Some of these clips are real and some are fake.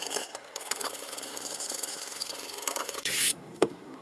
fake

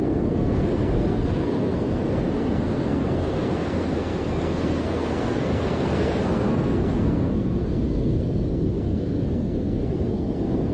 fake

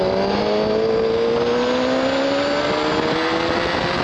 real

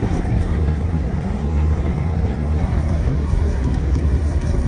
fake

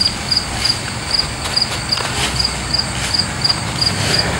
real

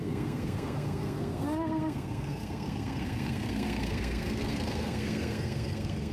fake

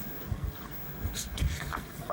fake